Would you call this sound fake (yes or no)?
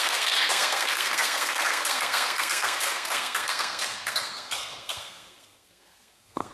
yes